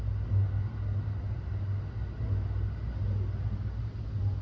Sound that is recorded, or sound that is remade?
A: recorded